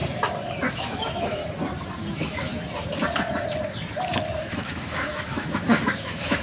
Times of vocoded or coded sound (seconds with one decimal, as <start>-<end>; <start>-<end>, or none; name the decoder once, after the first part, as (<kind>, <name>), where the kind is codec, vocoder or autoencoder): 0.7-1.4 (autoencoder, DAC-VAE); 2.1-2.5; 4.4-6.4